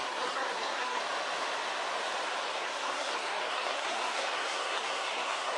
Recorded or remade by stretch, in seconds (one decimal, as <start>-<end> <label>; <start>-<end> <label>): 0.0-1.0 remade; 1.0-2.5 recorded; 2.5-5.6 remade